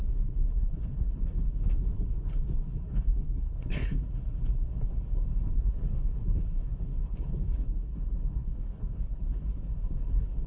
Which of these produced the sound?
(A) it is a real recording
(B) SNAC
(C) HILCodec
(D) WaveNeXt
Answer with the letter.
C